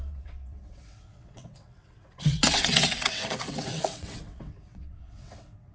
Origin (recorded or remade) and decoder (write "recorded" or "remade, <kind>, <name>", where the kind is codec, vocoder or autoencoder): remade, vocoder, WaveNeXt